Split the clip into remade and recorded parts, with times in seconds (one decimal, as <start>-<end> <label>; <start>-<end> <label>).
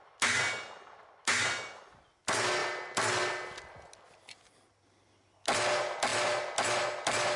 0.0-7.4 recorded